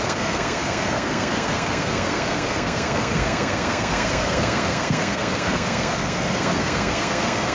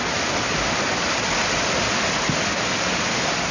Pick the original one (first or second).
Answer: second